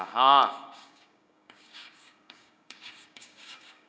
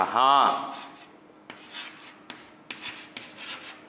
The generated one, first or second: first